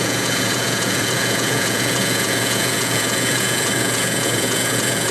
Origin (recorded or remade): remade